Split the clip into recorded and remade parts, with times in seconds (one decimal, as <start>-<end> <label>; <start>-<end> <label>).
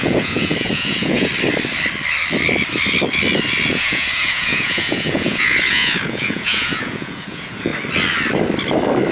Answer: 0.0-1.3 remade; 1.3-3.7 recorded; 3.7-7.7 remade; 7.7-9.1 recorded